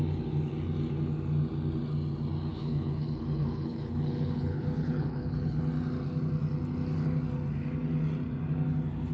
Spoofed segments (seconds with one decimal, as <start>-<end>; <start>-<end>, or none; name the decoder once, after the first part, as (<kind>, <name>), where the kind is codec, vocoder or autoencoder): 2.5-5.6 (codec, HILCodec)